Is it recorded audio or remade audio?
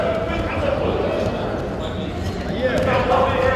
recorded